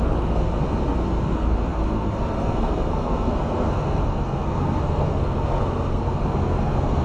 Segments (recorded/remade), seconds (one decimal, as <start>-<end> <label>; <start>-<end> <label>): 0.0-7.0 remade